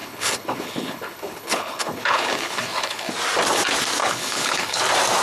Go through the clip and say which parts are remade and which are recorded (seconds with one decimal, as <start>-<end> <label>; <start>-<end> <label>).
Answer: 0.0-3.1 remade; 3.1-4.0 recorded; 4.0-4.8 remade; 4.8-5.2 recorded

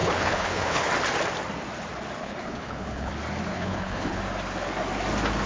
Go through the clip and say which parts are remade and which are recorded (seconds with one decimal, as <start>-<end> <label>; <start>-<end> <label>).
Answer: 0.0-0.9 remade; 0.9-2.2 recorded; 2.2-3.1 remade; 3.1-3.5 recorded; 3.5-4.2 remade; 4.2-5.5 recorded